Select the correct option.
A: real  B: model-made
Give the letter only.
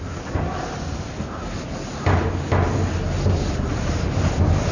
A